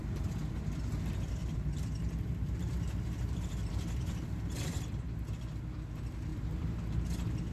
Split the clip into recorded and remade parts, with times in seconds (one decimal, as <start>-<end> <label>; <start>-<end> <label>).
0.0-1.4 recorded; 1.4-4.9 remade; 4.9-7.5 recorded